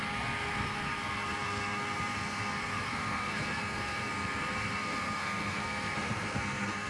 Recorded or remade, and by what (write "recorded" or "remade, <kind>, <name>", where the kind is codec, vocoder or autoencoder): remade, codec, SNAC